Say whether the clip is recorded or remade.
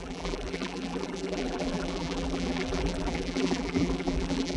remade